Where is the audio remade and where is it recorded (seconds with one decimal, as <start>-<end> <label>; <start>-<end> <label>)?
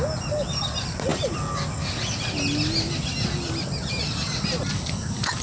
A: 0.0-5.4 recorded